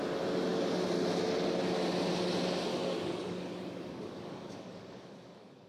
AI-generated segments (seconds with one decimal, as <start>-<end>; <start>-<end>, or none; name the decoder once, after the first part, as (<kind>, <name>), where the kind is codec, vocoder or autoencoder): 2.7-5.7 (codec, DAC)